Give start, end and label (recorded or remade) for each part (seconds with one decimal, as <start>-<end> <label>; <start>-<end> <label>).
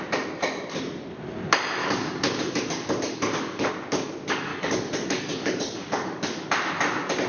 0.0-1.8 recorded; 1.8-3.7 remade; 3.7-4.5 recorded; 4.5-6.5 remade; 6.5-7.3 recorded